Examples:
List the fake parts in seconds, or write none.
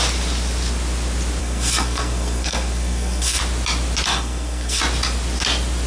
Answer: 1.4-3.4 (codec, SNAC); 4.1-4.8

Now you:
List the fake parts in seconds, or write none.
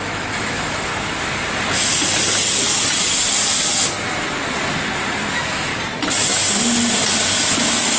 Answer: 0.0-0.9 (autoencoder, DAC-VAE); 5.3-5.7; 7.6-8.0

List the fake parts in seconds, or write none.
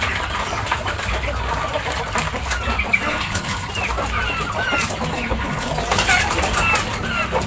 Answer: 3.1-3.7 (codec, HILCodec); 5.1-5.7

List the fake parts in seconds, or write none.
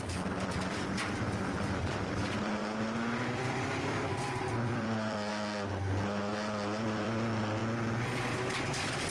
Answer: 0.0-2.6 (vocoder, BigVGAN v2); 3.2-5.3; 6.3-7.6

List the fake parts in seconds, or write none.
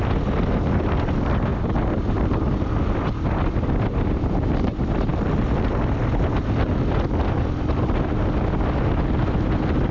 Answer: none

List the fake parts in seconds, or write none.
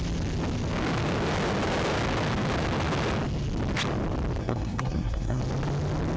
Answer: 4.4-5.4 (codec, SNAC)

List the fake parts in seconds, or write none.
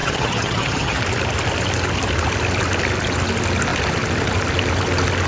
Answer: 0.0-1.0 (vocoder, HiFi-GAN)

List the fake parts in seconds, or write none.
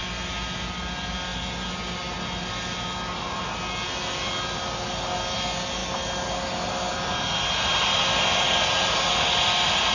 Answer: none